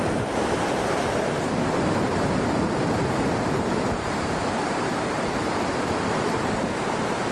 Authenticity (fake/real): fake